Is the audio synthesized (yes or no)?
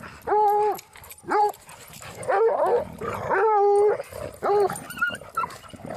no